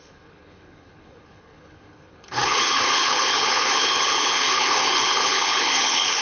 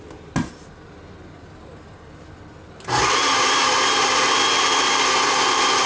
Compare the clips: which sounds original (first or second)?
second